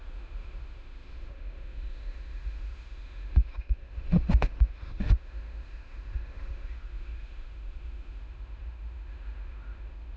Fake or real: fake